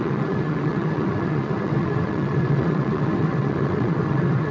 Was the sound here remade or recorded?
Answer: remade